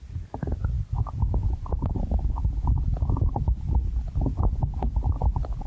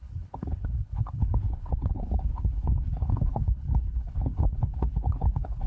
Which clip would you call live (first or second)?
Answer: first